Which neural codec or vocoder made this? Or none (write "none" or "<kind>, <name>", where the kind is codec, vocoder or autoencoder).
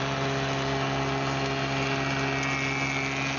none